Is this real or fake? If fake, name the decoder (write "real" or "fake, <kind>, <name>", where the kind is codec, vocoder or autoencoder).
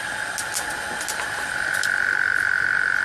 real